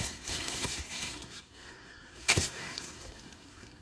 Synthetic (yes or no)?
yes